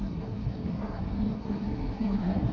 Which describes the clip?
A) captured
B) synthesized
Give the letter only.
B